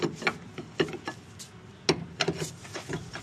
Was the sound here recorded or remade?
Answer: recorded